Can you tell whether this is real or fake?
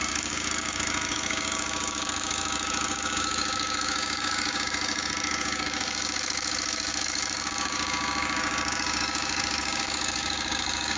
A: fake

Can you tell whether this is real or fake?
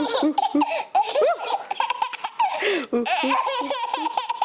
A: real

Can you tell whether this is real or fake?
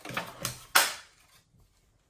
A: real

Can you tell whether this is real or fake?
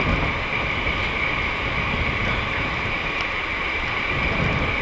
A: real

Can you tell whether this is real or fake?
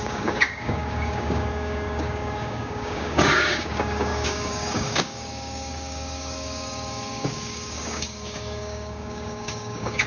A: fake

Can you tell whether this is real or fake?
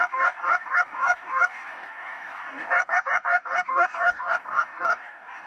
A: fake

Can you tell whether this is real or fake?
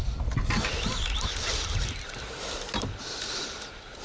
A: real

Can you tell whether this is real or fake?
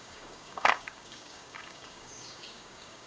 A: fake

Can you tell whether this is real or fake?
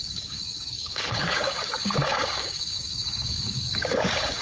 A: fake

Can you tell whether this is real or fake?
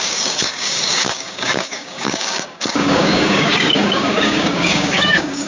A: fake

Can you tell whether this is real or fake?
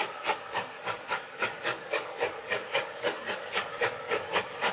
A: fake